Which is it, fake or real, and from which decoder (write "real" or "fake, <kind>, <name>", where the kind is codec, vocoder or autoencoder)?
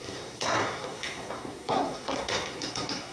fake, codec, SNAC